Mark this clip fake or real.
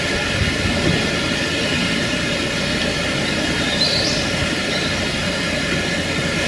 real